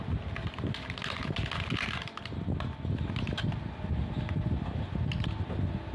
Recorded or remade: recorded